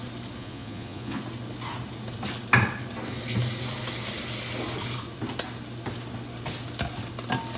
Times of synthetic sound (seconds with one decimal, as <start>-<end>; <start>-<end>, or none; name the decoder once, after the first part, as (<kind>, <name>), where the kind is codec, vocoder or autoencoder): 0.4-1.2 (vocoder, Vocos)